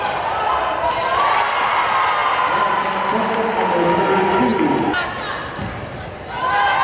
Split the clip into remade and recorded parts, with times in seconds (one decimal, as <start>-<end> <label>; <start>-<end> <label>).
0.0-6.8 recorded